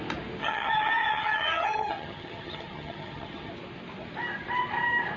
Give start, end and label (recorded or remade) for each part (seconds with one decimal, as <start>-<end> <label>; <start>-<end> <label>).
0.0-0.4 recorded; 0.4-3.5 remade; 3.5-5.2 recorded